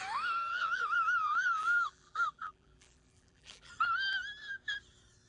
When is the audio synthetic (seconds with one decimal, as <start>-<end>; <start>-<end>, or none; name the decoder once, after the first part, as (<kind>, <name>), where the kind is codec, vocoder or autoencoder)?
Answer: 0.5-3.7 (vocoder, BigVGAN v2)